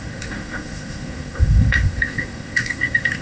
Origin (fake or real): fake